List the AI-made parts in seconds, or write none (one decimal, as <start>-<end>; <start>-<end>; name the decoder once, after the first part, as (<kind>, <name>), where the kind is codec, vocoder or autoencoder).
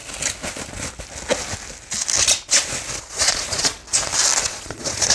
3.0-3.8 (vocoder, Vocos); 4.4-5.1